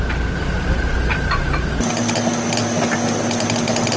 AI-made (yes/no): no